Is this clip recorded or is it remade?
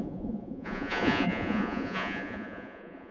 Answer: remade